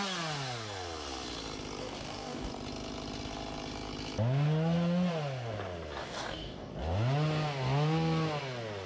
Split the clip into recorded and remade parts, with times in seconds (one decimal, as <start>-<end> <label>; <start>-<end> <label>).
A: 0.0-1.8 recorded; 1.8-2.5 remade; 2.5-6.0 recorded; 6.0-6.7 remade; 6.7-8.9 recorded